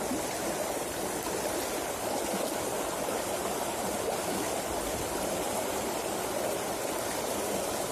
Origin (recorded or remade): recorded